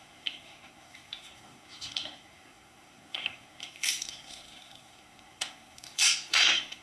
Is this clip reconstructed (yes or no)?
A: yes